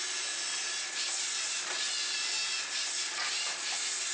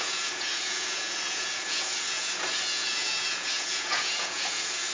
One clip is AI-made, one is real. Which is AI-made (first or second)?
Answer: second